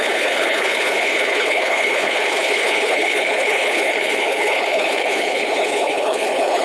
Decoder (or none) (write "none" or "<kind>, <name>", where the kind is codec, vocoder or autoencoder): codec, HILCodec